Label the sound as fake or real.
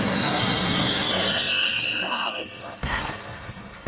fake